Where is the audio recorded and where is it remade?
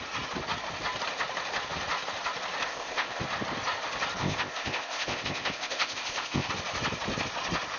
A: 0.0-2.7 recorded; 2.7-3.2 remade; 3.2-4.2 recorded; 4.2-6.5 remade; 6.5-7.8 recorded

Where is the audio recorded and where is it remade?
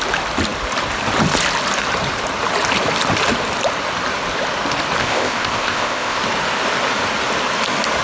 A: 0.0-5.0 recorded; 5.0-6.2 remade; 6.2-8.0 recorded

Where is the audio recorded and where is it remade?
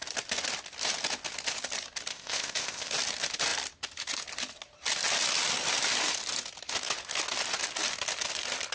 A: 0.0-2.1 recorded; 2.1-2.9 remade; 2.9-8.7 recorded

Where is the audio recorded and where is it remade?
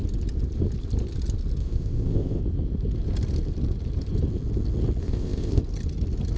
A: 0.0-1.6 recorded; 1.6-2.4 remade; 2.4-5.0 recorded; 5.0-5.6 remade; 5.6-6.4 recorded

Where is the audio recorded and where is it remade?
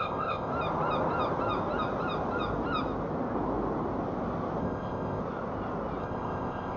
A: 0.0-0.5 remade; 0.5-4.6 recorded; 4.6-5.2 remade; 5.2-6.0 recorded; 6.0-6.8 remade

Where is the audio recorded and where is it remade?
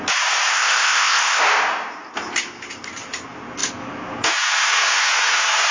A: 0.0-0.5 recorded; 0.5-1.4 remade; 1.4-5.7 recorded